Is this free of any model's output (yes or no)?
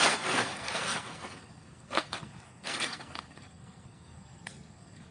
no